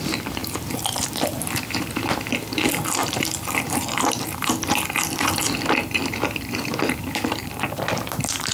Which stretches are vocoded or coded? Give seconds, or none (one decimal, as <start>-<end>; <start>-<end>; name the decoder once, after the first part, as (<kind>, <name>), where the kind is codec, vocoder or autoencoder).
0.4-2.6 (vocoder, BigVGAN v2); 3.0-5.4; 6.0-8.5